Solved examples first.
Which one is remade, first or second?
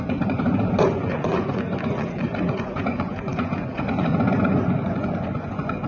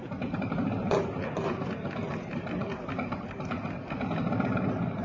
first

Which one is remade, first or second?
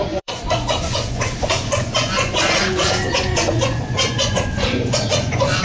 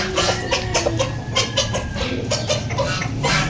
first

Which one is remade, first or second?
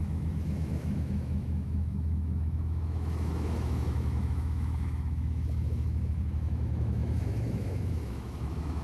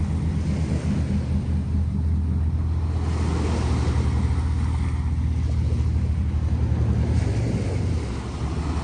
first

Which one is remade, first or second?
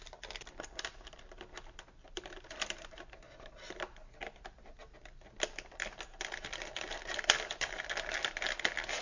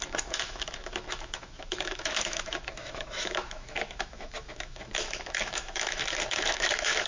second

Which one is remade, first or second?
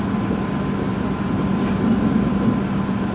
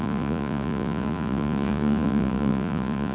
second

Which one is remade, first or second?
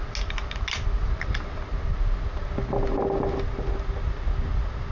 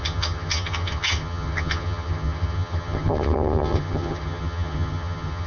second